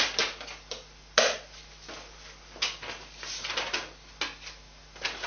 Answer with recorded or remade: recorded